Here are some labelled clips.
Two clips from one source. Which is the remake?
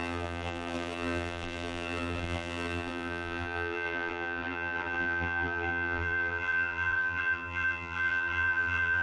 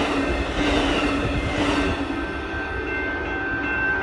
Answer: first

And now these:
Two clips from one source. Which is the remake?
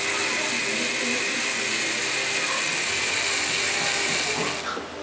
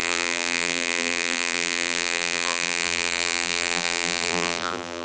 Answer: second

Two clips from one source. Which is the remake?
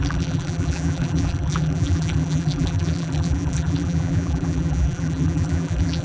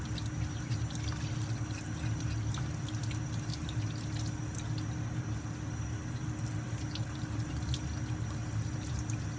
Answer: first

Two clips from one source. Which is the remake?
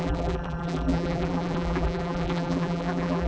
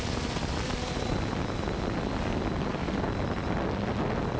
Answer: first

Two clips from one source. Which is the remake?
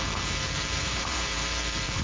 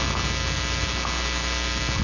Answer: first